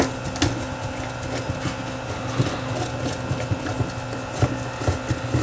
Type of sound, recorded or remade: recorded